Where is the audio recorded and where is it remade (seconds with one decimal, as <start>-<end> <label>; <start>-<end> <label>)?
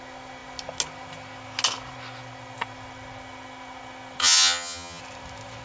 0.0-4.2 recorded; 4.2-5.0 remade; 5.0-5.6 recorded